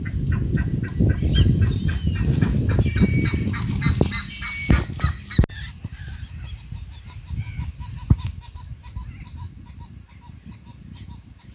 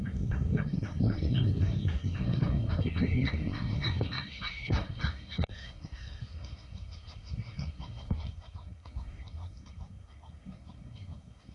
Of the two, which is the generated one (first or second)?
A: second